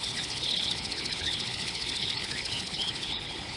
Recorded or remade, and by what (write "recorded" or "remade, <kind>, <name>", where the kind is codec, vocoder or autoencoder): remade, codec, HILCodec